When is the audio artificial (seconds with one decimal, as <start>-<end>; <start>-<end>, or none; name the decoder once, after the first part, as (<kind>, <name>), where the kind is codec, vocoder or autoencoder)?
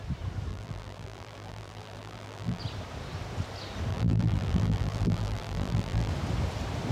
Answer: 0.5-2.6 (vocoder, BigVGAN v2); 3.9-6.1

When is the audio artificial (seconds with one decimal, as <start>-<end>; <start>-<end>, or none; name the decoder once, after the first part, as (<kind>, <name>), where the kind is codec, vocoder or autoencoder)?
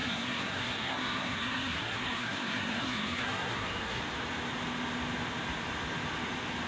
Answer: 0.0-4.0 (codec, SNAC)